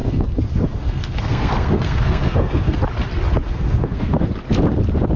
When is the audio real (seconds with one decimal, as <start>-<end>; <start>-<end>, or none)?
2.8-3.4; 4.3-5.2